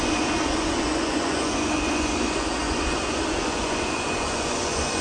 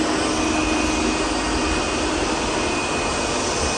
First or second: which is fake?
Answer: first